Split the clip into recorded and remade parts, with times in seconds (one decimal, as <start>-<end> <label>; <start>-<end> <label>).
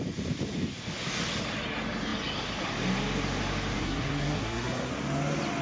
0.0-3.7 recorded; 3.7-4.9 remade; 4.9-5.6 recorded